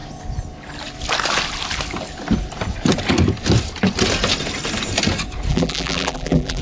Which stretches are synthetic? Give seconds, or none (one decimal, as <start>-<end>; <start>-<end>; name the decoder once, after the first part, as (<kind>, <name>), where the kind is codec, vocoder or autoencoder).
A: 5.5-6.6 (vocoder, BigVGAN v2)